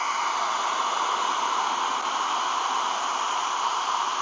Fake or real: real